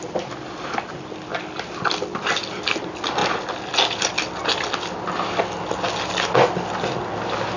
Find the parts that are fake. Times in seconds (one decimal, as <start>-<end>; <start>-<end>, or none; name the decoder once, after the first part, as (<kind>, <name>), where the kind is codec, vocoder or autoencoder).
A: none